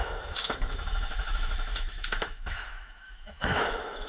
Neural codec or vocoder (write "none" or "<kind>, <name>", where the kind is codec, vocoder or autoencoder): autoencoder, DAC-VAE